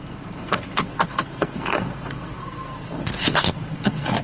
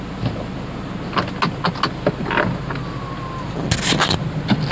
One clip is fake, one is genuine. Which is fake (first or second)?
first